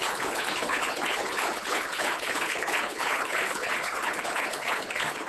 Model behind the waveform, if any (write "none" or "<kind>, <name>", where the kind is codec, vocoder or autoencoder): codec, HILCodec